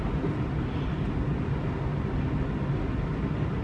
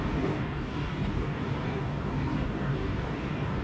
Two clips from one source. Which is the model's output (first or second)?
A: second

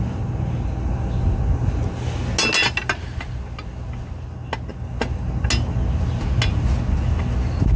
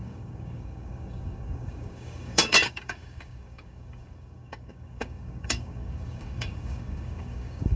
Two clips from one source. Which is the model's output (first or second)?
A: second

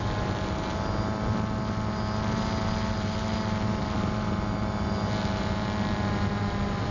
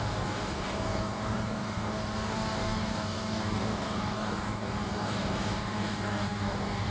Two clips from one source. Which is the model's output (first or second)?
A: second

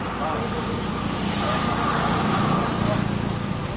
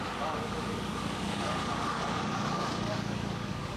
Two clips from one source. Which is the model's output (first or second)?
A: second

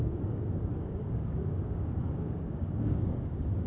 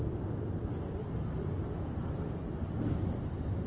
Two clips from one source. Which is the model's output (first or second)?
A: first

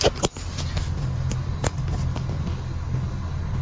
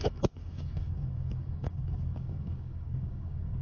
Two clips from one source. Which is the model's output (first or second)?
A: second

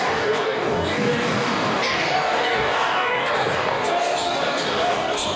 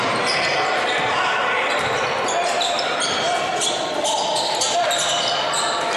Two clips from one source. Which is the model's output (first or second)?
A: first